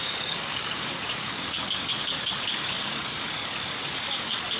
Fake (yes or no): yes